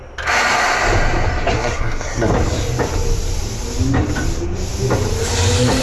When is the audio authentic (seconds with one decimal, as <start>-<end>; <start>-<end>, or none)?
0.0-1.5; 2.3-5.8